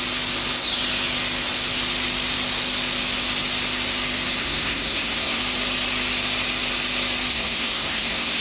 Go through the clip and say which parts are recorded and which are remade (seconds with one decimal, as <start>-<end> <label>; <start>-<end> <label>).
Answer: 0.0-4.4 recorded; 4.4-5.4 remade; 5.4-7.3 recorded; 7.3-8.4 remade